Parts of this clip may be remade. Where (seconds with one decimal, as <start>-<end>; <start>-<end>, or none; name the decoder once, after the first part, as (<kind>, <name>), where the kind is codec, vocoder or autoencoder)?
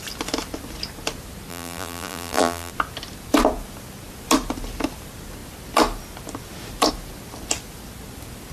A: 1.5-2.7 (vocoder, BigVGAN v2)